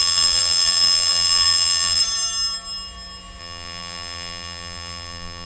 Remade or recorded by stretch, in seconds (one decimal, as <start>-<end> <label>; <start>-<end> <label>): 0.0-2.0 remade; 2.0-3.4 recorded; 3.4-5.4 remade